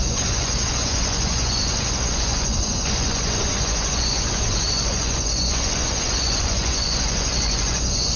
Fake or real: fake